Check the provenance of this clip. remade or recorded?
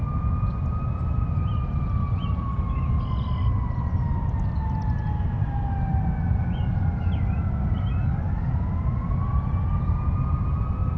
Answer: recorded